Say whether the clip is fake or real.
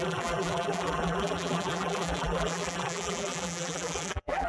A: fake